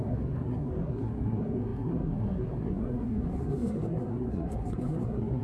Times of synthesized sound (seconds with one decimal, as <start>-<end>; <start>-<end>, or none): 0.0-5.4

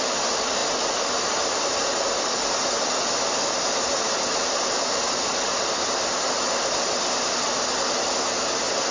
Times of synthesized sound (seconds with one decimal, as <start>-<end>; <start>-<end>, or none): none

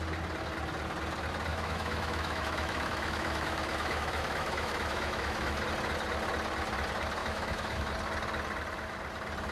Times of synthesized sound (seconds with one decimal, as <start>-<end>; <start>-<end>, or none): 1.5-5.6; 7.2-7.9